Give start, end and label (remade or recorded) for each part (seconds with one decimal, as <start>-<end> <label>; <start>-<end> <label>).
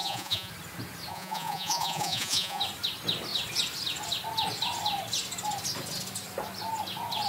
0.0-0.5 remade; 0.5-1.1 recorded; 1.1-2.6 remade; 2.6-7.3 recorded